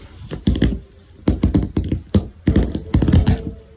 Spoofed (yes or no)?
no